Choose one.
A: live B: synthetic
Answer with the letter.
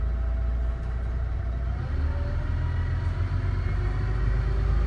A